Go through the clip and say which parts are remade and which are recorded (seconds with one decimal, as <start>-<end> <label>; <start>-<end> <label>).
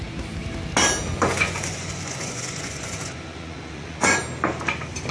0.0-1.1 recorded; 1.1-4.2 remade; 4.2-5.1 recorded